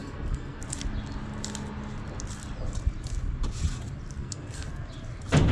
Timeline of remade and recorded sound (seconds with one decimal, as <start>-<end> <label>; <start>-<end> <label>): 0.0-0.6 remade; 0.6-4.2 recorded; 4.2-4.7 remade; 4.7-5.5 recorded